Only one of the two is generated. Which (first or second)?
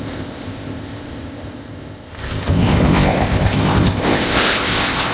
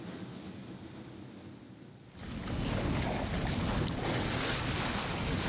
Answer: first